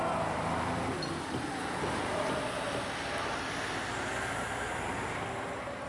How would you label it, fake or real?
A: real